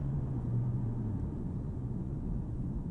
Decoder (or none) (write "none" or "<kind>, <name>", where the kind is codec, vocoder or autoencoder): vocoder, Vocos